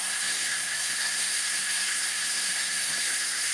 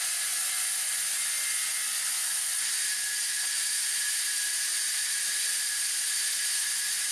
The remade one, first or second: first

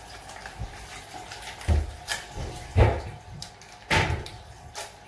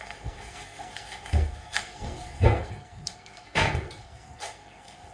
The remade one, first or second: second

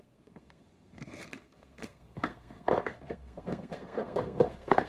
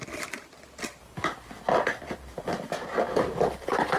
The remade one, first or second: first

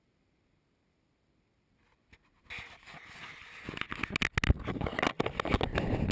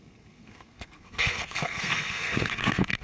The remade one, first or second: second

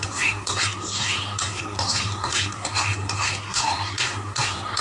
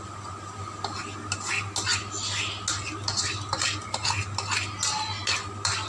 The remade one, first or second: first